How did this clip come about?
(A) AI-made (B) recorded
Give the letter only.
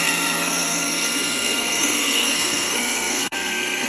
A